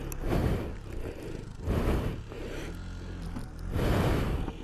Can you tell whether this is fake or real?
real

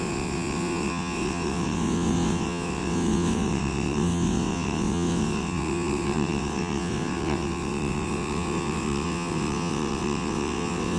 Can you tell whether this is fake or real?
fake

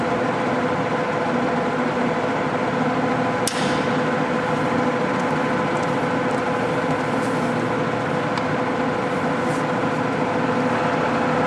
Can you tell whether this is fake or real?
real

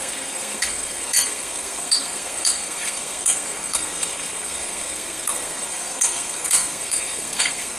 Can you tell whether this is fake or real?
fake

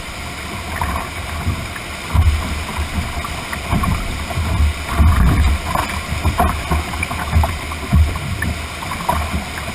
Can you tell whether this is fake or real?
real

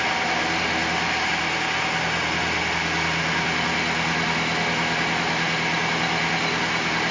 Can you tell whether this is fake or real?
real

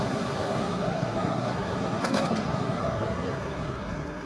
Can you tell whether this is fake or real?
fake